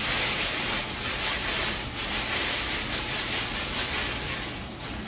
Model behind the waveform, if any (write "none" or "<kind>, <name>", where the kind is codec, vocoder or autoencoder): none